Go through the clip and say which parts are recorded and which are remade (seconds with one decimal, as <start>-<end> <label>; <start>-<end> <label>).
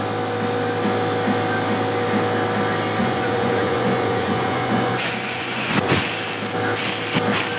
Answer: 0.0-3.0 recorded; 3.0-6.1 remade; 6.1-7.6 recorded